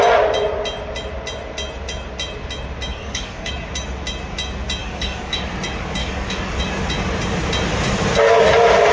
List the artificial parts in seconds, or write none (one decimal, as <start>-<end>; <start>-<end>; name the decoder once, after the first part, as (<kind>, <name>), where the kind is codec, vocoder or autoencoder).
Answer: 2.9-3.5 (codec, DAC); 4.8-5.5; 6.0-6.6